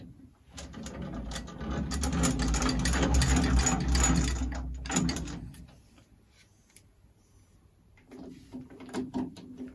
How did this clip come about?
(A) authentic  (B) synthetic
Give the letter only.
A